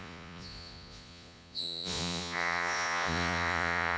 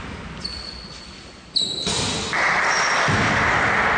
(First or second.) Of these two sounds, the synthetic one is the first